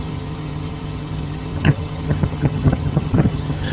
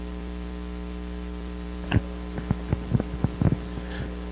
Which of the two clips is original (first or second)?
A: second